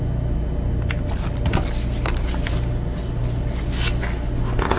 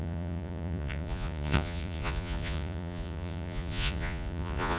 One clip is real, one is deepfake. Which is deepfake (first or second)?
second